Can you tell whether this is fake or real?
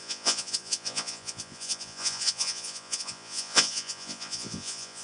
fake